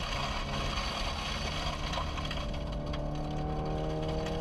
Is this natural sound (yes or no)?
yes